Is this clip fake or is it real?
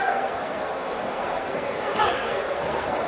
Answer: fake